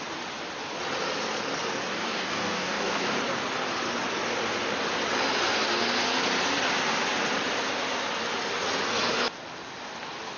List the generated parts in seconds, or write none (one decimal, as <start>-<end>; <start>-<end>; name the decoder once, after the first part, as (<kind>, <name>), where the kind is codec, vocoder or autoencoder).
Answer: 2.0-3.1 (codec, DAC)